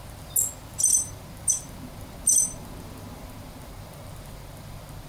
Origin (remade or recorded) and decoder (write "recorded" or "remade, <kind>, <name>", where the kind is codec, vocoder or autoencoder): recorded